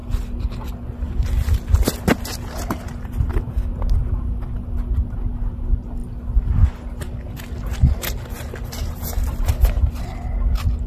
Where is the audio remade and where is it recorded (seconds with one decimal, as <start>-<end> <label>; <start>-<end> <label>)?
0.0-8.8 recorded; 8.8-10.0 remade; 10.0-10.9 recorded